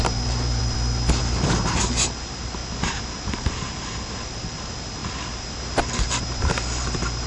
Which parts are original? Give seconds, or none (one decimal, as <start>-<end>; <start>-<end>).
2.6-3.4